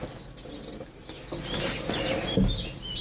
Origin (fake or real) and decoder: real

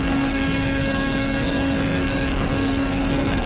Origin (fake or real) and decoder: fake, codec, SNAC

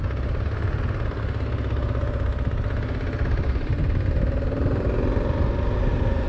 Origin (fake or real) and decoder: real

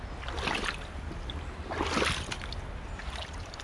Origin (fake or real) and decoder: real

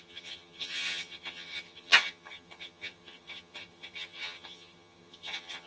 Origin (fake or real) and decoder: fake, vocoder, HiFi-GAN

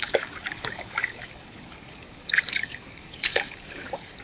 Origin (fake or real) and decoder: fake, codec, DAC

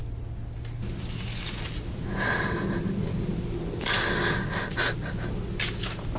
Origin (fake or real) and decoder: real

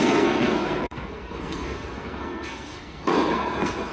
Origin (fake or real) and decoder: fake, codec, SNAC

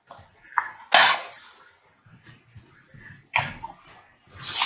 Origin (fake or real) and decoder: real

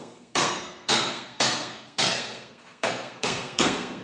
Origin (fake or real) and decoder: fake, codec, SNAC